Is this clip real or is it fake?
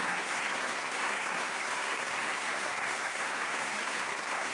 fake